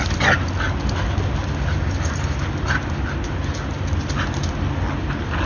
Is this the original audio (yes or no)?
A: yes